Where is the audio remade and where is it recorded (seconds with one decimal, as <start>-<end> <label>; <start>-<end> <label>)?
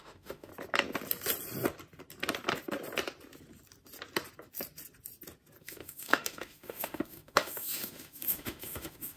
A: 0.0-0.5 remade; 0.5-5.6 recorded; 5.6-9.2 remade